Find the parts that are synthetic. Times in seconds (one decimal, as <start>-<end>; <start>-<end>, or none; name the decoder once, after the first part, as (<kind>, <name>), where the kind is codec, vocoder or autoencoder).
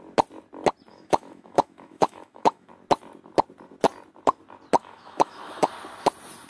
0.9-2.7 (autoencoder, DAC-VAE); 4.8-5.7